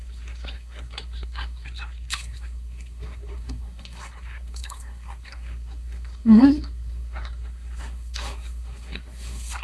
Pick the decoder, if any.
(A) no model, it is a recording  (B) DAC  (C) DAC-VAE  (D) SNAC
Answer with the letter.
D